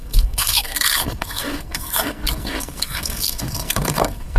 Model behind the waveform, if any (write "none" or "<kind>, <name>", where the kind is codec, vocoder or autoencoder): codec, SNAC